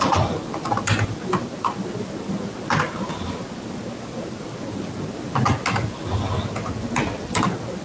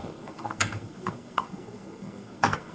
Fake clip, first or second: second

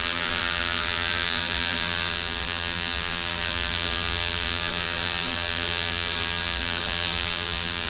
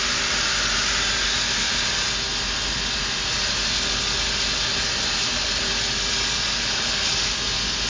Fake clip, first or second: first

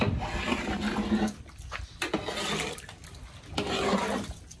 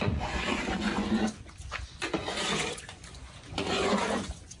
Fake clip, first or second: second